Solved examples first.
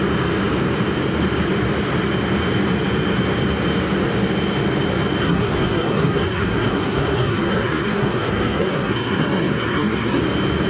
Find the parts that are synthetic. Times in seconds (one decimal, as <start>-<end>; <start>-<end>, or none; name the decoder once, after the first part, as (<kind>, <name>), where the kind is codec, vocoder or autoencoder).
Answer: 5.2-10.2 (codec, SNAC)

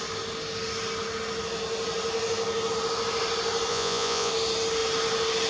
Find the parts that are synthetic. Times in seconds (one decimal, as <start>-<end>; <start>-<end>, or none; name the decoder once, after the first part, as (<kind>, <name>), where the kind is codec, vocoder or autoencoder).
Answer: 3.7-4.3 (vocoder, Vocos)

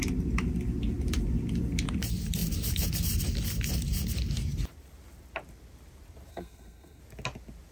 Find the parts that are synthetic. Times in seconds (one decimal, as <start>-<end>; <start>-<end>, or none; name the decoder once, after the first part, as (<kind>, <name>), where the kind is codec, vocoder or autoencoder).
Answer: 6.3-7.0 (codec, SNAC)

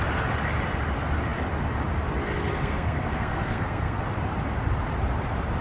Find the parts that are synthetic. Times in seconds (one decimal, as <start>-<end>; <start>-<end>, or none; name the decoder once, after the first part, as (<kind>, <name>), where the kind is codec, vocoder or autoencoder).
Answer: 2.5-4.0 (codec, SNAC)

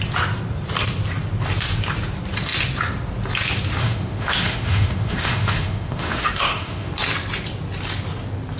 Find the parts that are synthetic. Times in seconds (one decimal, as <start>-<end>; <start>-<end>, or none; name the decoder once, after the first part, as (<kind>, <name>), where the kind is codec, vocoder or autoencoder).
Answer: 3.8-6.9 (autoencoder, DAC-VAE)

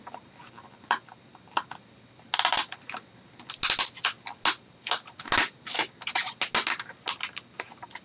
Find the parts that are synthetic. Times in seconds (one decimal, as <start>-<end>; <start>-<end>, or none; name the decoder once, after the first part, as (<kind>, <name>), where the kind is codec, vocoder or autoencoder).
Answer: none